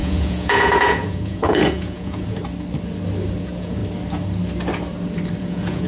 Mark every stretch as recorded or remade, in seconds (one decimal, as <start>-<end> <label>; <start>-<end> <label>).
0.0-2.4 remade; 2.4-3.4 recorded; 3.4-3.8 remade; 3.8-5.4 recorded; 5.4-5.9 remade